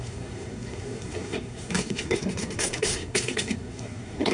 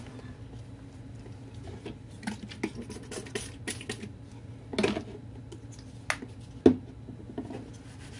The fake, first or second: first